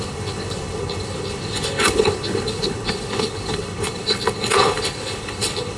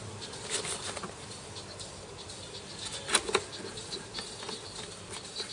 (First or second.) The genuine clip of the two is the second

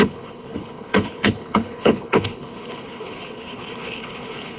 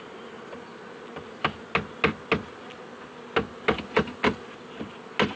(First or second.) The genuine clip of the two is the second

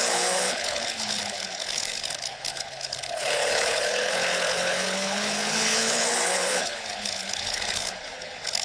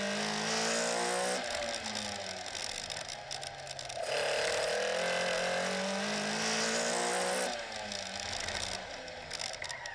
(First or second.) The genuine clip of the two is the second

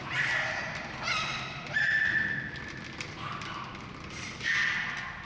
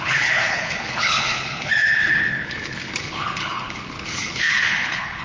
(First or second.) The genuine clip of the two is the first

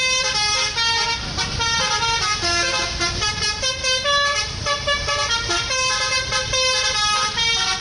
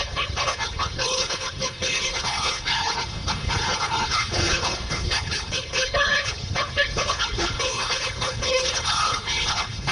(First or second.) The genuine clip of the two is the first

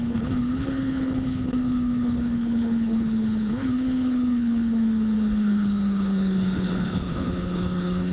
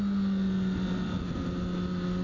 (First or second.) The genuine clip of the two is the second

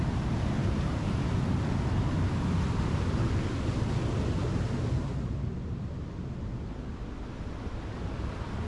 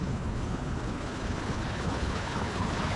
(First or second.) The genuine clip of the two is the first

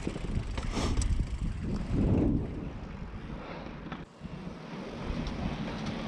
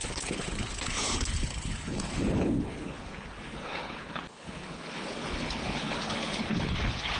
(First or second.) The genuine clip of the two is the first